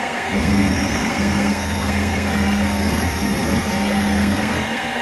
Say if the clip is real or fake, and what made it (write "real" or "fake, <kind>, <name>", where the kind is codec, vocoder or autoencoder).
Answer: fake, codec, SNAC